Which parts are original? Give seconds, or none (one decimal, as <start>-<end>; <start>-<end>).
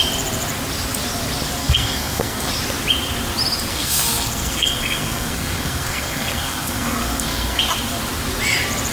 0.0-1.6; 2.5-3.7; 7.6-8.9